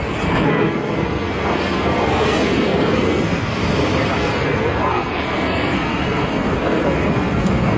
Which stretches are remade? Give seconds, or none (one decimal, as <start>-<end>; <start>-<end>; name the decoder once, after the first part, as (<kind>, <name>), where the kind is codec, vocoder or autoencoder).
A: 0.0-3.6 (codec, SNAC); 4.2-7.8